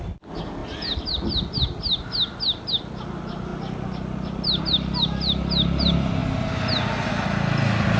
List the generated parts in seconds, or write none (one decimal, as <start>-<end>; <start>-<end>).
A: none